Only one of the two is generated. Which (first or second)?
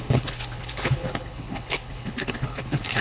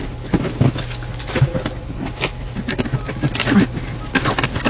first